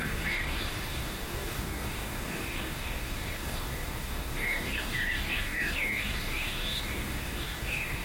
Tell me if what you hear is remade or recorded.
remade